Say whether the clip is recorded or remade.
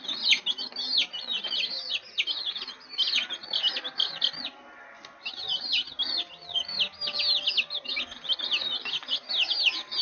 recorded